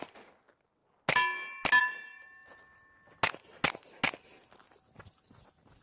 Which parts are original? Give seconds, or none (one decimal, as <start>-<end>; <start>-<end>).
0.0-5.8